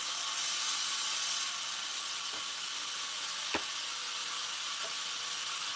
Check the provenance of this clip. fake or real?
real